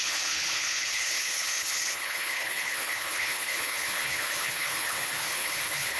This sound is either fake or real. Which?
fake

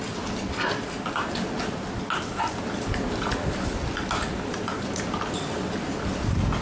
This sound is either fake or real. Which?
real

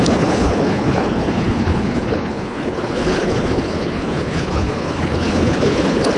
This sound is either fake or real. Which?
fake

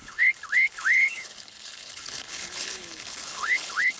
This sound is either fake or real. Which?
fake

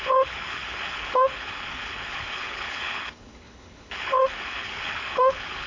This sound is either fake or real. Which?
fake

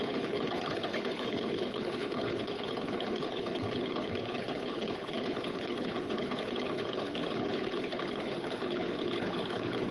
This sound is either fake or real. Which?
fake